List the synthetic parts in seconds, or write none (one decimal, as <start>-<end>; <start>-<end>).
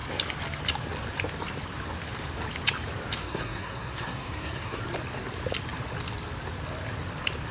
3.2-4.8